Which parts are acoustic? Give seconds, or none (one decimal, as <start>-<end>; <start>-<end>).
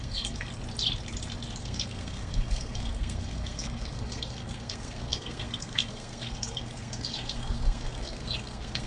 0.5-1.6